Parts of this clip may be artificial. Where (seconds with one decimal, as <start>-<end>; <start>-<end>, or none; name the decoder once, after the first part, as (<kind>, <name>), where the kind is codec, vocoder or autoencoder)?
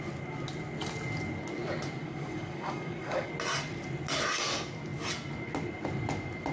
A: 2.0-3.3 (codec, DAC)